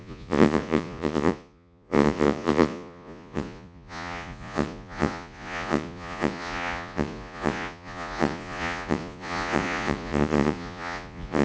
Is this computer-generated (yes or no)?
yes